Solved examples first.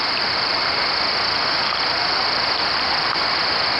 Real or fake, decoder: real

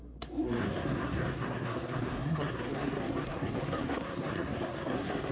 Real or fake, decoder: fake, codec, SNAC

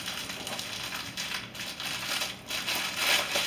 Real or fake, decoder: real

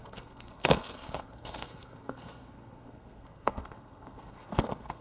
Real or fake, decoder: fake, codec, SNAC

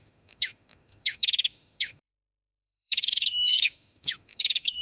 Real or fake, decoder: fake, autoencoder, DAC-VAE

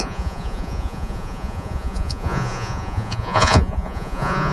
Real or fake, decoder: fake, vocoder, Vocos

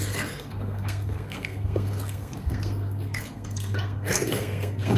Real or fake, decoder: fake, codec, SNAC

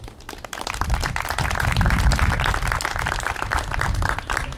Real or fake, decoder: real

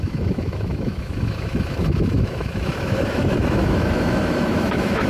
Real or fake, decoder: fake, autoencoder, DAC-VAE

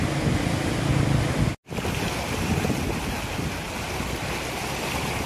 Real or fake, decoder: real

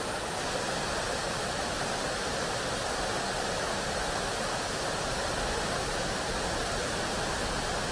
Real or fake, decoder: real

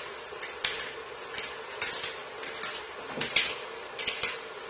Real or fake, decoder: real